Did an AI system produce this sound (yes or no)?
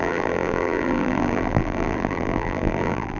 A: yes